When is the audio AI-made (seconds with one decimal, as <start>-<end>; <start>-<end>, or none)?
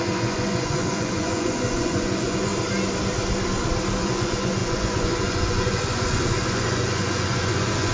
0.0-2.5; 4.0-7.9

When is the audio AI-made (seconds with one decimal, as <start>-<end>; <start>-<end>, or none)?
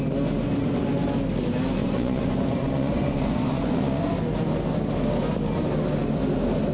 1.8-4.0